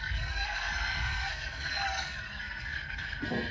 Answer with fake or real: fake